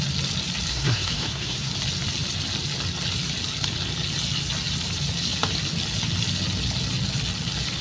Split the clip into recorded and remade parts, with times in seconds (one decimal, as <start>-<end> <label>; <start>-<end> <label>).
0.0-0.7 recorded; 0.7-1.7 remade; 1.7-7.8 recorded

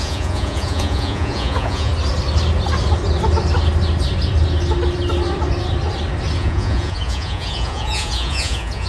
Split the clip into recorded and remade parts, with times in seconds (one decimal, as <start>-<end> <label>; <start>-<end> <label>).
0.0-1.9 remade; 1.9-6.4 recorded; 6.4-8.9 remade

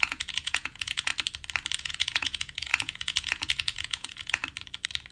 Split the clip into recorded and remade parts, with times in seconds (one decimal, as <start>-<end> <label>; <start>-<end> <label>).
0.0-1.1 remade; 1.1-1.8 recorded; 1.8-4.4 remade; 4.4-5.1 recorded

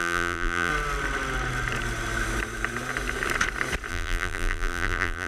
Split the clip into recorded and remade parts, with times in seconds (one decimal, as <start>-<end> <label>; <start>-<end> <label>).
0.0-0.7 remade; 0.7-3.9 recorded; 3.9-5.3 remade

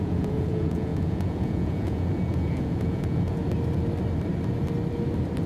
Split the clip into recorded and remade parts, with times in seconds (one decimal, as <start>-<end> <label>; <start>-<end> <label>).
0.0-3.4 remade; 3.4-5.5 recorded

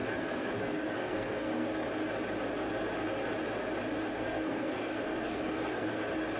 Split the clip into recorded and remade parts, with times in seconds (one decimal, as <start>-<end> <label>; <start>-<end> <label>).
0.0-1.7 remade; 1.7-4.1 recorded; 4.1-6.0 remade; 6.0-6.4 recorded

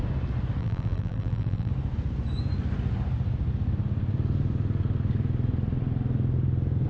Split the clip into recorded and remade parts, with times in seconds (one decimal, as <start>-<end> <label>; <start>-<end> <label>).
0.0-0.6 recorded; 0.6-1.7 remade; 1.7-6.9 recorded

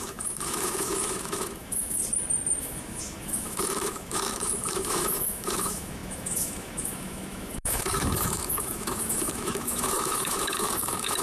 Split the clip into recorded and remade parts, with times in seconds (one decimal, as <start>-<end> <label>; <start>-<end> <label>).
0.0-2.0 remade; 2.0-2.6 recorded; 2.6-11.2 remade